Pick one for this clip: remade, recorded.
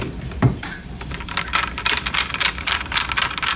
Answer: recorded